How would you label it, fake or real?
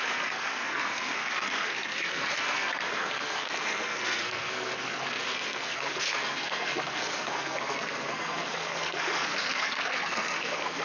fake